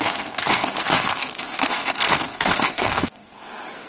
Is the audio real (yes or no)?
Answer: no